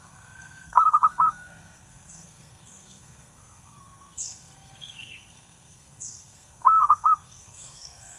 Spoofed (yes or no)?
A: yes